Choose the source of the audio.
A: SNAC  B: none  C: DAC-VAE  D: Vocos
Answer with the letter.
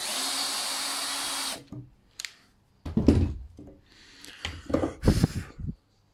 B